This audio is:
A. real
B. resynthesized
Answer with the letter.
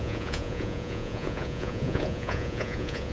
B